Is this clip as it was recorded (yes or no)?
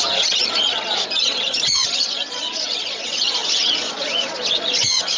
no